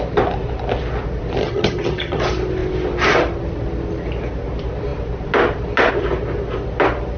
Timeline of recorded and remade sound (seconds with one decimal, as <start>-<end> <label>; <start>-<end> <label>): 0.0-1.4 recorded; 1.4-2.2 remade; 2.2-7.2 recorded